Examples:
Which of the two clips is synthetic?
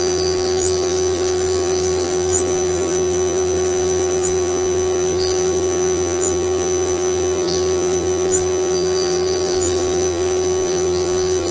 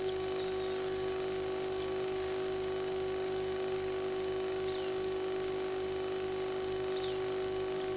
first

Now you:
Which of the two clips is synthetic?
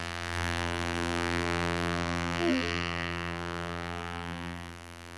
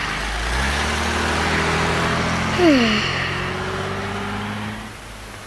first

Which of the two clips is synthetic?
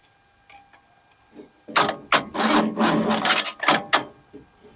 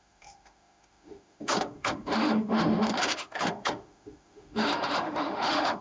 second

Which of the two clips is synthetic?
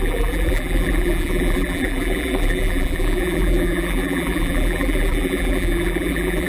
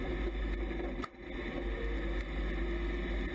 first